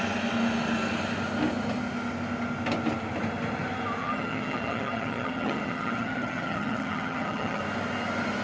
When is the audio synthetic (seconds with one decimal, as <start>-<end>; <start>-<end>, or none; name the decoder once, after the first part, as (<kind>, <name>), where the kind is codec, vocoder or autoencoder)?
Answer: 4.0-7.6 (vocoder, HiFi-GAN)